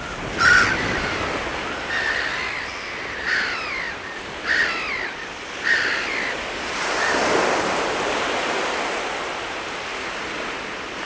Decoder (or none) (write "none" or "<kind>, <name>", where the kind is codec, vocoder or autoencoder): none